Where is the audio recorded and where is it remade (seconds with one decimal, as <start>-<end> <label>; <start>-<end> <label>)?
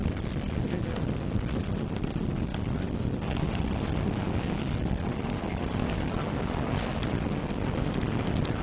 0.0-8.6 recorded